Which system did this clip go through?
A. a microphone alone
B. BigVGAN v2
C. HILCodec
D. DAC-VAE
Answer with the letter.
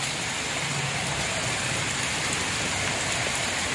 A